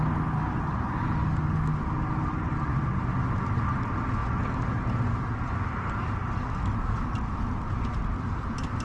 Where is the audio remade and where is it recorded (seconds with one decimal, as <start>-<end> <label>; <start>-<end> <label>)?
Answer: 0.0-8.8 recorded